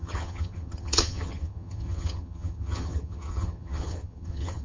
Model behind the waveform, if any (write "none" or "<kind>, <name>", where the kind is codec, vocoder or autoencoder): vocoder, HiFi-GAN